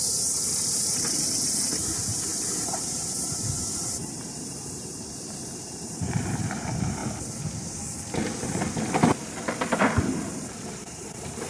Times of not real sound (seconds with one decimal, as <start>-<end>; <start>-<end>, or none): 0.0-1.8; 2.6-7.0; 10.7-11.5